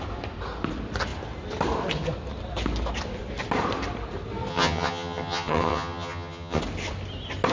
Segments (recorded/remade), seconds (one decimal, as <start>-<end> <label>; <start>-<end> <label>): 0.0-4.5 recorded; 4.5-6.6 remade; 6.6-7.5 recorded